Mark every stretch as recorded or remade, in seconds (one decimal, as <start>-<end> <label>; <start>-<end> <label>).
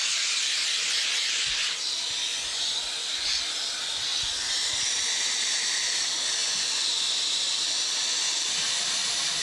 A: 0.0-2.3 recorded; 2.3-3.4 remade; 3.4-6.4 recorded; 6.4-6.9 remade; 6.9-9.4 recorded